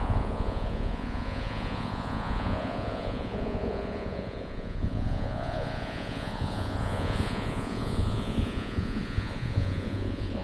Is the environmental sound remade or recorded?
remade